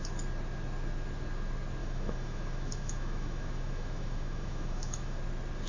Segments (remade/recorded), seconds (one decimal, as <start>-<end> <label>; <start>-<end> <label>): 0.0-1.8 recorded; 1.8-5.2 remade; 5.2-5.7 recorded